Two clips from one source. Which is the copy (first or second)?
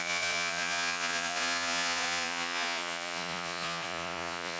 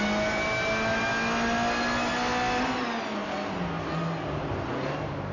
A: first